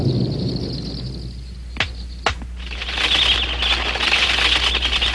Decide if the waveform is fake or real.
real